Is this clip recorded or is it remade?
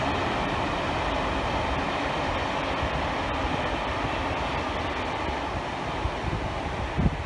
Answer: recorded